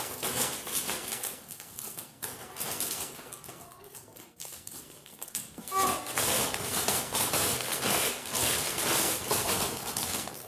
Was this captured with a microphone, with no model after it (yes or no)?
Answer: no